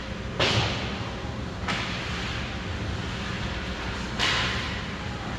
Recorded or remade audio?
recorded